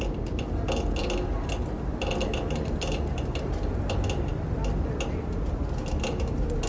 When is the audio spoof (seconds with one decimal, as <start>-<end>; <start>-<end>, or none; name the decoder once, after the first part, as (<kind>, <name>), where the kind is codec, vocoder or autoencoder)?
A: none